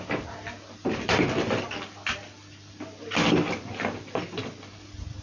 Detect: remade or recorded recorded